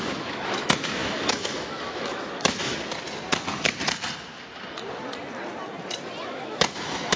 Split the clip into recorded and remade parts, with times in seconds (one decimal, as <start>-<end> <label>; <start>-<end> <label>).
0.0-2.7 remade; 2.7-6.2 recorded; 6.2-7.2 remade